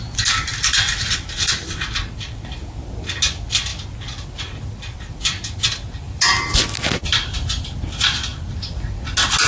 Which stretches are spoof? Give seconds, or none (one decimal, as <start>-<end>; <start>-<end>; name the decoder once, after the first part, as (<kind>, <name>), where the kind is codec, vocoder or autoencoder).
none